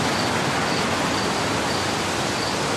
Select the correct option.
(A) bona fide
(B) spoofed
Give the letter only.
A